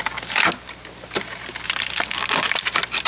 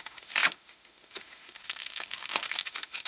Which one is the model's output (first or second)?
second